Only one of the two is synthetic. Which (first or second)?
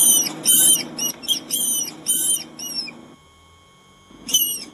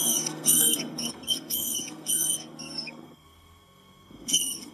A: second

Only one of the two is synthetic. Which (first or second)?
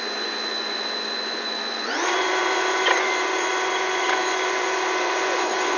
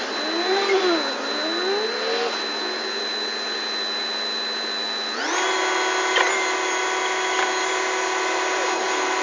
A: first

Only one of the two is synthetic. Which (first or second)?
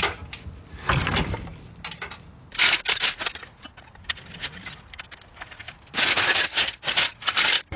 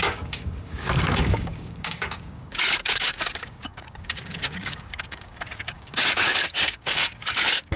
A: second